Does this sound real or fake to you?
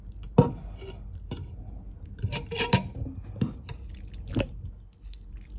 real